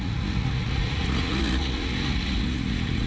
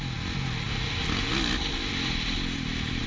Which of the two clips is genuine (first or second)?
second